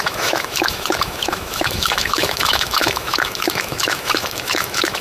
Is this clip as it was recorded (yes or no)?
no